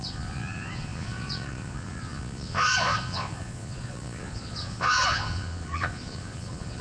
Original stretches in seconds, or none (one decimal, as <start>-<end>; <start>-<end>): none